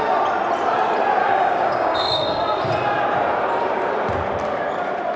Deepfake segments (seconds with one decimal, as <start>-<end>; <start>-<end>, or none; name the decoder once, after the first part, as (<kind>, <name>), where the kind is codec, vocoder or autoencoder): 1.2-2.4 (codec, DAC)